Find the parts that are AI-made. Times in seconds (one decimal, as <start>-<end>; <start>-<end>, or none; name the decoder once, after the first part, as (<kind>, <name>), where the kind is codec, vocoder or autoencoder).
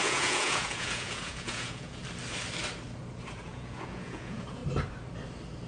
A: 0.0-2.0 (vocoder, Vocos); 3.4-4.6